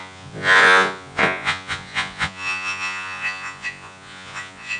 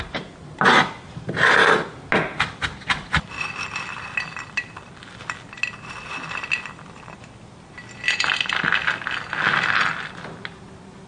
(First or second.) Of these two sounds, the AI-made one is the first